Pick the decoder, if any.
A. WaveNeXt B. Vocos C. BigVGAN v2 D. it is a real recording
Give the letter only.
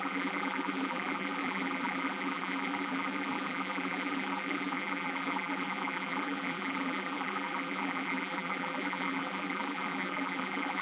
C